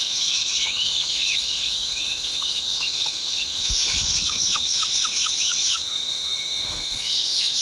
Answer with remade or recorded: remade